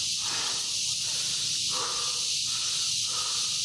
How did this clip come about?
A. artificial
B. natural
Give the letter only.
B